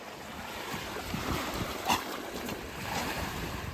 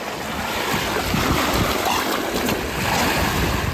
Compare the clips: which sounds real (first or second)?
second